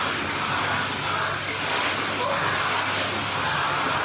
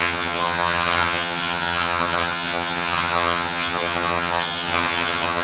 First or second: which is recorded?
first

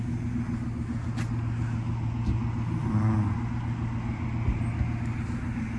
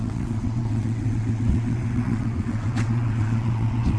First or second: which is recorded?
first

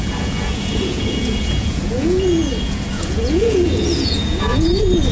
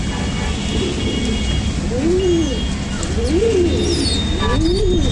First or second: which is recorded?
second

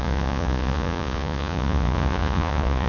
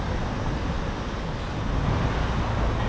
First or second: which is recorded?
second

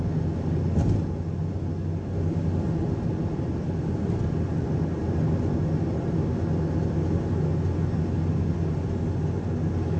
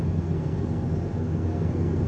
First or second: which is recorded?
first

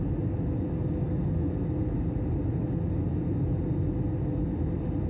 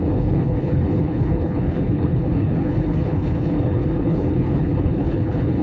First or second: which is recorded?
first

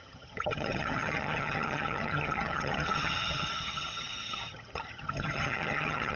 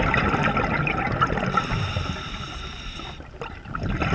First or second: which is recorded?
second